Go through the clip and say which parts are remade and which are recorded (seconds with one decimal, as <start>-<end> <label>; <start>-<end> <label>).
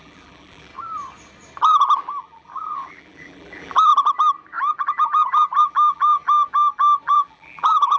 0.0-0.7 remade; 0.7-2.0 recorded; 2.0-3.9 remade; 3.9-5.6 recorded; 5.6-6.2 remade; 6.2-7.1 recorded; 7.1-8.0 remade